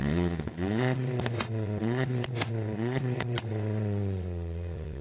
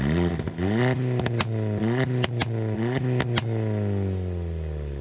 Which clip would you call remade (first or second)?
first